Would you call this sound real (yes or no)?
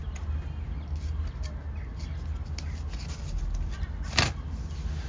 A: yes